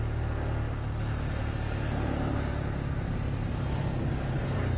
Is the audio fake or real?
real